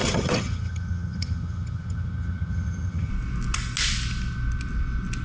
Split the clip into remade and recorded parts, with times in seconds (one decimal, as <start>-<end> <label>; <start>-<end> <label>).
0.0-3.1 remade; 3.1-5.2 recorded